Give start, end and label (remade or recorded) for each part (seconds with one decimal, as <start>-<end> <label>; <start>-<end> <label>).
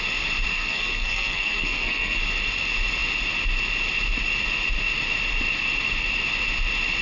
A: 0.0-0.5 recorded; 0.5-2.2 remade; 2.2-7.0 recorded